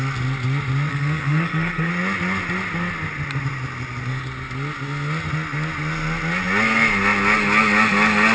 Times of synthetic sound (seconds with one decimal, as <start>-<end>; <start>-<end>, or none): 0.9-1.9

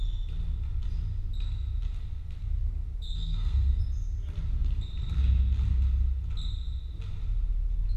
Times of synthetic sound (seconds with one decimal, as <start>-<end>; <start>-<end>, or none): 3.2-3.8

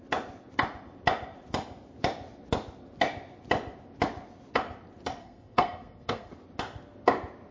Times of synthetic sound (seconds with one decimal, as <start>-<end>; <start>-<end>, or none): 5.2-6.3